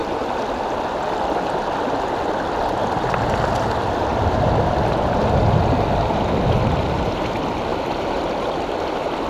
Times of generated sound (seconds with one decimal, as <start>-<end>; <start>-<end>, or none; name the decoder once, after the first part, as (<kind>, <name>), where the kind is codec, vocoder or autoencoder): 4.1-5.2 (vocoder, BigVGAN v2); 7.7-8.9